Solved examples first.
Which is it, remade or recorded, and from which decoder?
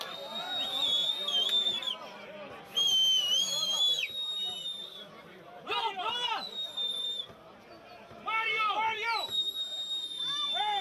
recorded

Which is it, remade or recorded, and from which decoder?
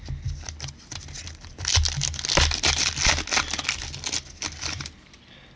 recorded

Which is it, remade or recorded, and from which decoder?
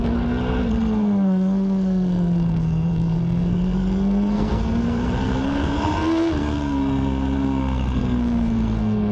remade, codec, SNAC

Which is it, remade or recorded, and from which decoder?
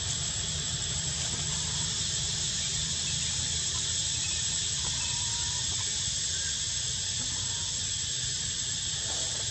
recorded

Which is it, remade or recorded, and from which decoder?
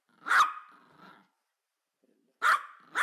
recorded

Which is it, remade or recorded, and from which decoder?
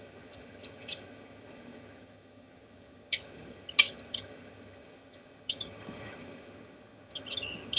remade, vocoder, HiFi-GAN